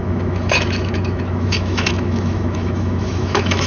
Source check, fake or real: fake